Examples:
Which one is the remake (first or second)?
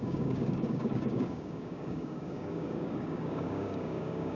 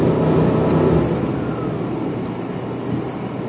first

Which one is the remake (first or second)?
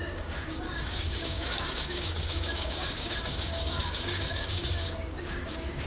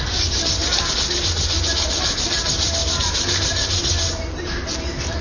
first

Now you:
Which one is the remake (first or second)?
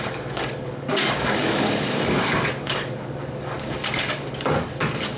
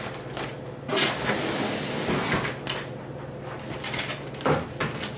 first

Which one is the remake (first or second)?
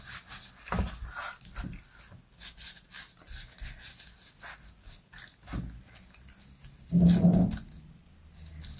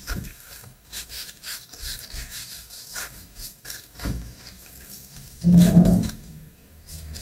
second